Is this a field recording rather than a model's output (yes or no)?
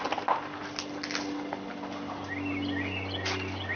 yes